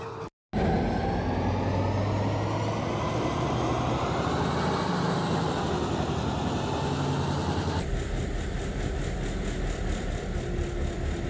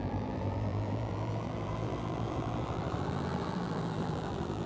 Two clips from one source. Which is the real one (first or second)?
first